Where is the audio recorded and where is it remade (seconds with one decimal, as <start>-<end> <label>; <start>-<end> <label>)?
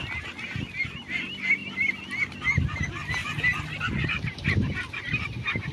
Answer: 0.0-3.2 recorded; 3.2-4.5 remade; 4.5-5.7 recorded